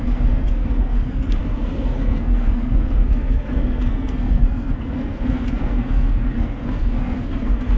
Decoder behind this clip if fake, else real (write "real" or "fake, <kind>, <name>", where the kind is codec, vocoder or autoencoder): fake, codec, SNAC